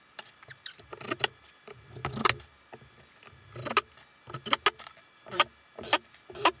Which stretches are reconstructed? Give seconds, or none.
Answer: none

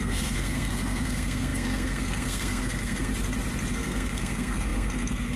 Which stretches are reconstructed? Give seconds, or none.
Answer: 0.0-3.1 (codec, SNAC); 3.7-5.4

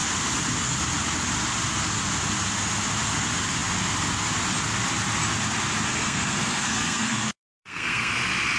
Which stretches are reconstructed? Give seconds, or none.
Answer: 5.9-8.1 (codec, SNAC)